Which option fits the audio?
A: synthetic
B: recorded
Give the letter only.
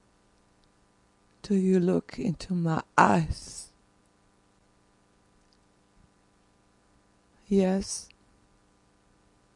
B